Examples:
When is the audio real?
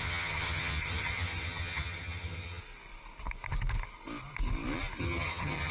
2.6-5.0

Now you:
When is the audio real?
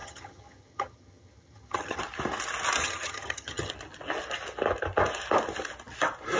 2.0-2.8; 3.7-6.4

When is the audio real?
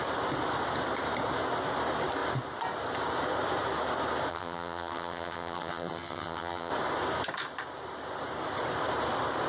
0.0-4.3; 6.7-9.5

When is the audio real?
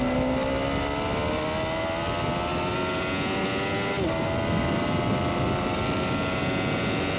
0.0-7.2